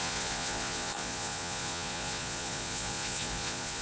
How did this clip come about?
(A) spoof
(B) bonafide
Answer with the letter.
A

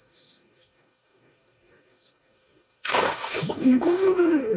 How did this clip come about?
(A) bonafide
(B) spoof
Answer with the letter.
B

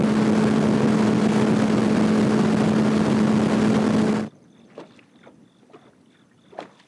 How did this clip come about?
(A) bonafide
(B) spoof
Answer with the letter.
A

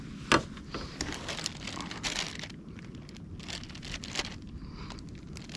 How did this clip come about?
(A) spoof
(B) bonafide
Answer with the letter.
B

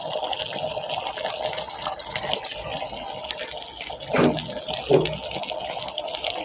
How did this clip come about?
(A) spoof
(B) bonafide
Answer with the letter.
B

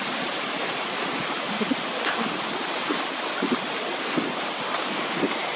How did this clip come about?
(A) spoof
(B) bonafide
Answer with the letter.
B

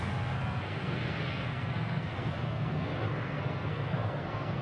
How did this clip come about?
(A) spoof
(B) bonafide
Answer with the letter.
A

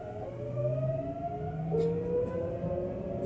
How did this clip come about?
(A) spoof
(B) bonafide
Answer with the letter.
B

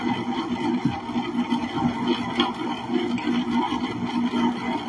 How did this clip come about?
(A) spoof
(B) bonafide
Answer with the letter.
B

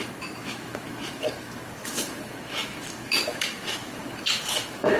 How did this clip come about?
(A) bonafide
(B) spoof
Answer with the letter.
B